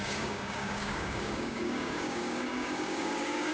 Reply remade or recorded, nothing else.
remade